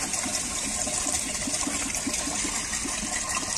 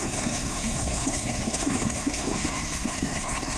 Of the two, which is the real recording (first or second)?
first